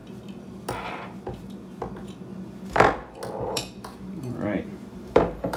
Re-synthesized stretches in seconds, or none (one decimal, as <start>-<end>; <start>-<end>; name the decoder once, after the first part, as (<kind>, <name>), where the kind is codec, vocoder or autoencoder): 3.4-5.6 (vocoder, BigVGAN v2)